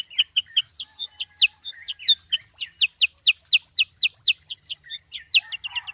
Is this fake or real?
real